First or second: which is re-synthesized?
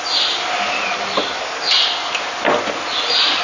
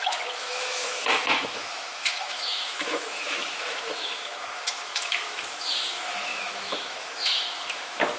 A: second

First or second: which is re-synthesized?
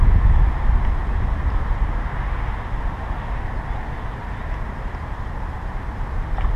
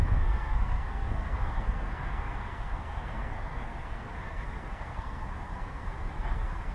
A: second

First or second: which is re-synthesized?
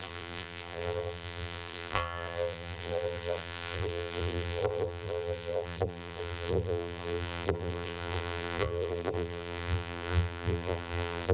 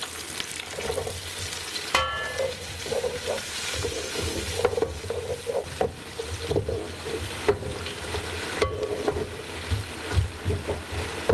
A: first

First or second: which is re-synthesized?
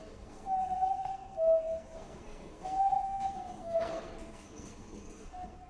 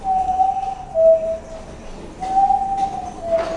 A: first